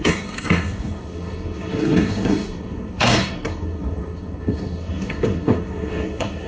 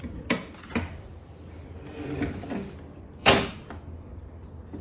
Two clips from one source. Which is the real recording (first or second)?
second